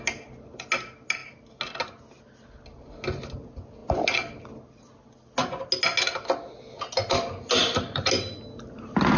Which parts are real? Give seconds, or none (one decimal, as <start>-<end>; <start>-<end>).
0.0-7.6; 8.1-9.2